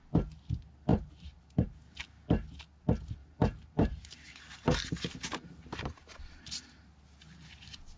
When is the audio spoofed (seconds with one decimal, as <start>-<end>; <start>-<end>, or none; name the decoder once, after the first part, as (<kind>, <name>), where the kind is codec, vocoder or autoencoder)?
0.9-2.0 (vocoder, BigVGAN v2); 3.2-6.7